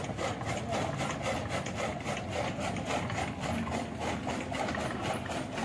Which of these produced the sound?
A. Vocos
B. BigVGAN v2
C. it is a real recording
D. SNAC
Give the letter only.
C